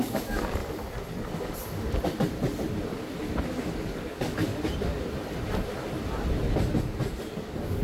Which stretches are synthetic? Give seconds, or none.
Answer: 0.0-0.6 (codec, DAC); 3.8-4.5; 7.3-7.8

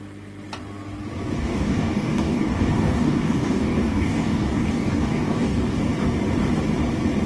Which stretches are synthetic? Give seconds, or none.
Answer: 1.4-5.8 (codec, DAC)

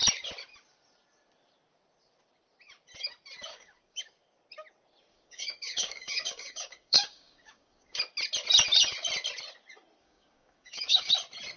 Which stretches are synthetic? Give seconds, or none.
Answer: 3.5-4.0 (codec, DAC); 5.1-8.0; 10.0-11.1

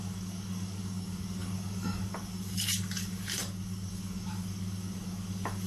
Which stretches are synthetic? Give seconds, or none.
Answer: 0.0-5.7 (codec, DAC)

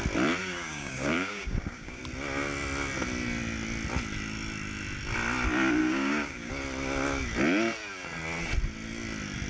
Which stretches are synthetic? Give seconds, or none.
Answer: 0.4-2.0 (codec, DAC); 5.8-6.5

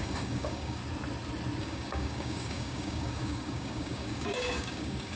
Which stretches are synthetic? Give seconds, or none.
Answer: 0.0-0.8 (codec, DAC); 1.6-5.2